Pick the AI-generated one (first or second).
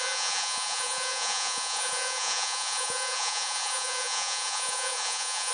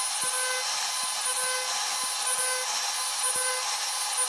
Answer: first